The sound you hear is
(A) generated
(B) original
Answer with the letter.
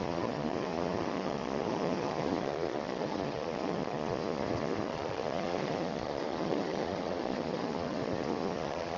A